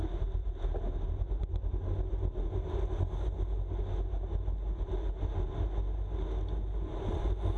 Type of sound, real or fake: real